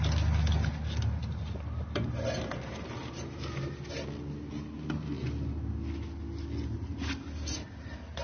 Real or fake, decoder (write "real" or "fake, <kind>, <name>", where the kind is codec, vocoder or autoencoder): real